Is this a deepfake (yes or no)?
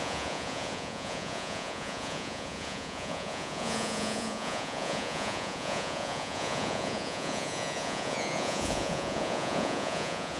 yes